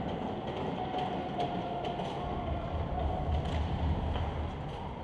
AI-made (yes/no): no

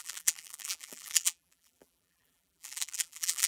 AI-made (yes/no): yes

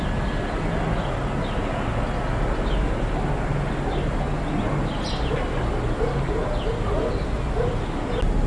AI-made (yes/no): no